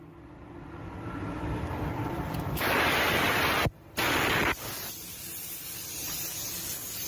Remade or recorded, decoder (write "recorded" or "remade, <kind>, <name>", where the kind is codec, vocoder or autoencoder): recorded